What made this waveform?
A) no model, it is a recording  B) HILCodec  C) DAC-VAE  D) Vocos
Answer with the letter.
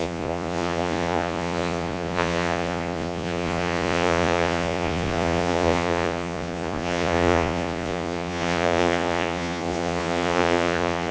D